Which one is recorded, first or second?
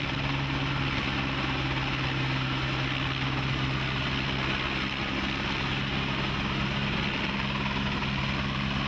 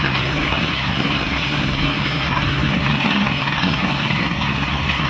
first